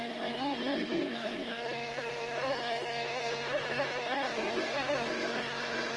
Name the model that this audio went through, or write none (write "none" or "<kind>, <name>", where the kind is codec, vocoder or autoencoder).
codec, SNAC